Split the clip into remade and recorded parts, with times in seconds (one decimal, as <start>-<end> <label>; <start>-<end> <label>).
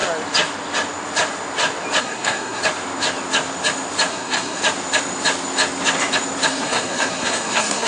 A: 0.0-2.0 recorded; 2.0-2.6 remade; 2.6-4.1 recorded; 4.1-4.6 remade; 4.6-6.5 recorded; 6.5-7.9 remade